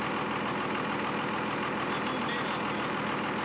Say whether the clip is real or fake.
real